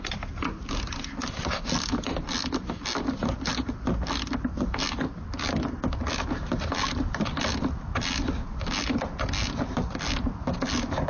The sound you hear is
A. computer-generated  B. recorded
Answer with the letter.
B